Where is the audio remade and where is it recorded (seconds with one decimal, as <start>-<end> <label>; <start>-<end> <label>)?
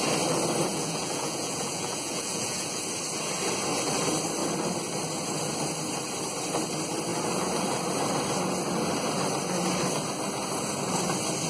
0.0-0.7 recorded; 0.7-2.8 remade; 2.8-11.5 recorded